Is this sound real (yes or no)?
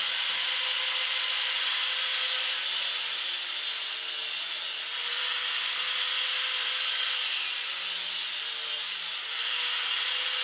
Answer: yes